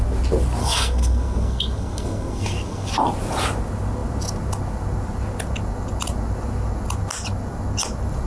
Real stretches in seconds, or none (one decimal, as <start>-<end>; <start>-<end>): 0.0-0.6; 2.9-8.3